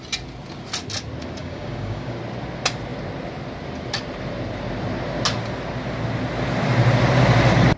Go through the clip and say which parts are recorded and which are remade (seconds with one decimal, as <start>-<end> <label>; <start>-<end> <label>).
0.0-1.4 recorded; 1.4-2.2 remade; 2.2-7.8 recorded